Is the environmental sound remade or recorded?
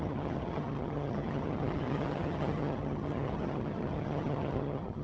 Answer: remade